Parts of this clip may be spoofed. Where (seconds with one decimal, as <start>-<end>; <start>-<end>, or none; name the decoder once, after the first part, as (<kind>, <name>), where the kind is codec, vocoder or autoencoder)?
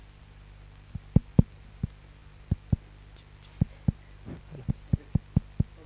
none